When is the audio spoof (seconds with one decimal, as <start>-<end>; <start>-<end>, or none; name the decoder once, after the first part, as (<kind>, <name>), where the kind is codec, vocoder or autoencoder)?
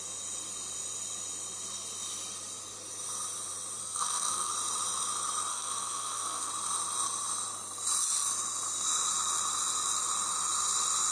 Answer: 3.8-4.5 (codec, SNAC); 5.5-6.5